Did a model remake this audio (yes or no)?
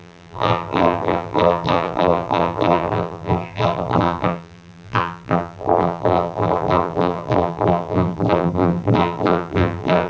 yes